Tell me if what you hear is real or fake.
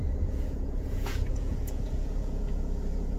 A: fake